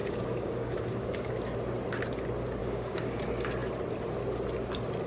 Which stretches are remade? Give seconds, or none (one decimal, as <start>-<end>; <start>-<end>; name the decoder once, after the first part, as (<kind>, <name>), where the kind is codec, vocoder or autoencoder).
0.0-1.3 (codec, DAC); 2.6-3.2